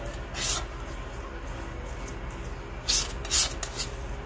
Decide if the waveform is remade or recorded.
recorded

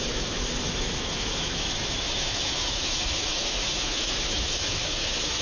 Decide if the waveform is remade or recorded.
remade